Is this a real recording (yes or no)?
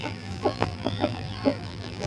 no